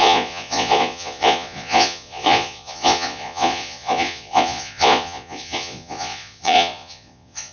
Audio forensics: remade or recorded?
remade